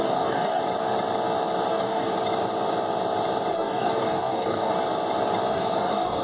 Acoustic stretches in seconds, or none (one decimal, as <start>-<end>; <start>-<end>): 0.6-1.7; 2.1-3.5; 4.7-5.5